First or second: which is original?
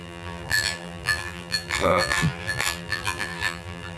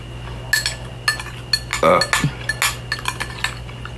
second